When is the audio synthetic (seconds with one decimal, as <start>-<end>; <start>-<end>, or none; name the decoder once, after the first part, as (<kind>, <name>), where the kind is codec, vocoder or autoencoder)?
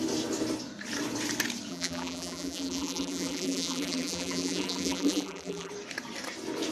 1.7-5.7 (vocoder, BigVGAN v2)